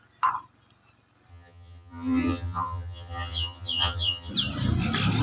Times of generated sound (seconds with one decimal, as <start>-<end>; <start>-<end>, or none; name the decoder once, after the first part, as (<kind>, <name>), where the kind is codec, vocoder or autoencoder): 1.3-4.3 (vocoder, HiFi-GAN)